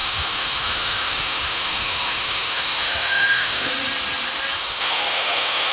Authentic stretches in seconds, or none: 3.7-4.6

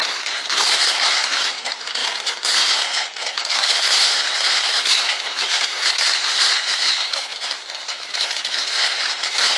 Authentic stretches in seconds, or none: none

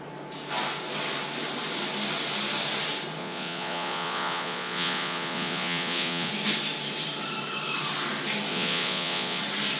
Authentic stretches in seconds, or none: 0.0-3.2; 6.3-8.5; 9.4-9.8

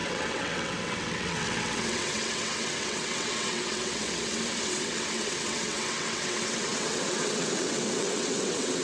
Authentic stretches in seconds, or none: none

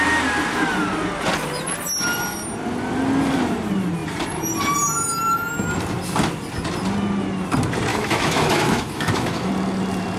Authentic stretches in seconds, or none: 0.0-7.9; 9.5-10.2

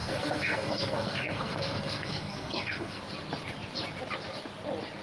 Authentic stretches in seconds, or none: 3.0-5.0

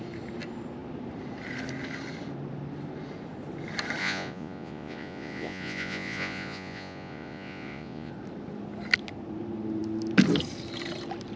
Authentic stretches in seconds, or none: 0.0-4.0; 8.1-11.4

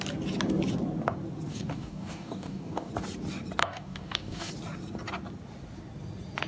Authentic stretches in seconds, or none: 0.0-1.5; 2.9-3.6; 4.5-6.5